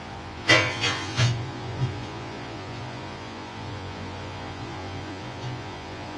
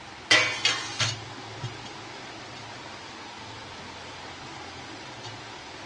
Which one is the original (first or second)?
second